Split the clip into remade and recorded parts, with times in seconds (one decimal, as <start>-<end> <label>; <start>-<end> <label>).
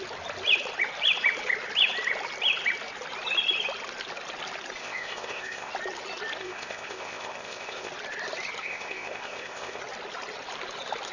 0.0-4.8 recorded; 4.8-5.7 remade; 5.7-6.4 recorded; 6.4-7.9 remade; 7.9-8.6 recorded; 8.6-9.8 remade; 9.8-11.1 recorded